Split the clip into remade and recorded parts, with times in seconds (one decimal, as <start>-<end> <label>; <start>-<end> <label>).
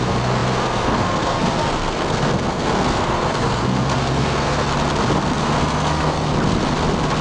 0.0-4.7 remade; 4.7-5.4 recorded; 5.4-6.3 remade; 6.3-7.2 recorded